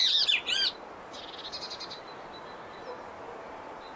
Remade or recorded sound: recorded